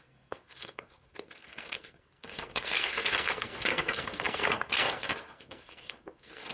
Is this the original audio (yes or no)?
no